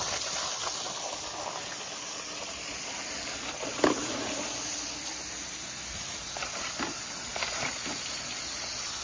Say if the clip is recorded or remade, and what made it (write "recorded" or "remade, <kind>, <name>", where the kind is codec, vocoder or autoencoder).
recorded